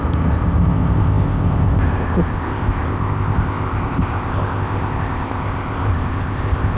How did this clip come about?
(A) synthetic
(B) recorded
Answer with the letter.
A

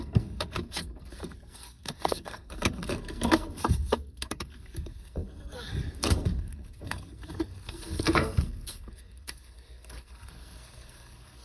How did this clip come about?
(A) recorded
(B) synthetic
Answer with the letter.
B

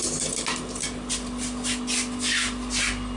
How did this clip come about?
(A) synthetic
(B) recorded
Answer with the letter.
B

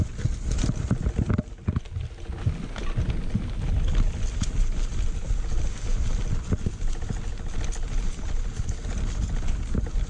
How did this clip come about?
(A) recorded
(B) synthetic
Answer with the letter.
A